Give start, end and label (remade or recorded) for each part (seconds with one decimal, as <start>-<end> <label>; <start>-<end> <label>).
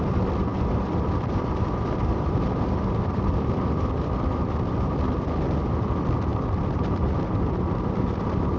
0.0-0.5 recorded; 0.5-3.3 remade; 3.3-6.3 recorded; 6.3-7.7 remade; 7.7-8.6 recorded